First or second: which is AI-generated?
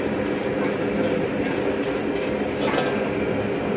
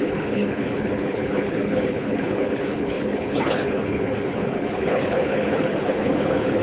second